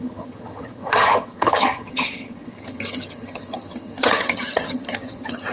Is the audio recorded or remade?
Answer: remade